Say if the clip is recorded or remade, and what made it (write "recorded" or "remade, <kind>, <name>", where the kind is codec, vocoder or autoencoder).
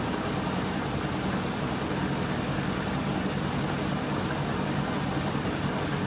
recorded